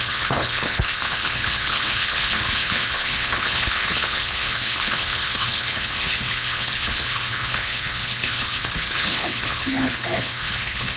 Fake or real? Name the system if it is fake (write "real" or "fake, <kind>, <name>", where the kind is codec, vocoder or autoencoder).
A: fake, codec, HILCodec